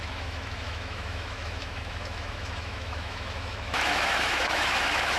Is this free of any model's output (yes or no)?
no